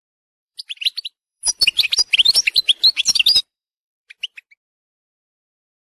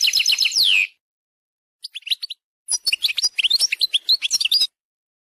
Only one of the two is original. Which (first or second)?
second